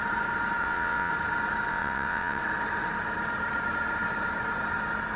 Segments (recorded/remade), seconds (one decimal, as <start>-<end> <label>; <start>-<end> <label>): 0.0-0.6 recorded; 0.6-1.1 remade; 1.1-1.7 recorded; 1.7-2.4 remade; 2.4-5.2 recorded